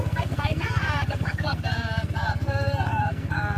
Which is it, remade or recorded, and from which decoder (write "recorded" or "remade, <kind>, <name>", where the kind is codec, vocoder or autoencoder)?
remade, codec, SNAC